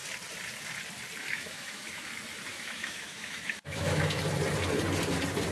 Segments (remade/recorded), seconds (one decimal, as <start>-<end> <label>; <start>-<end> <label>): 0.0-1.2 recorded; 1.2-2.1 remade; 2.1-2.5 recorded; 2.5-4.2 remade; 4.2-5.5 recorded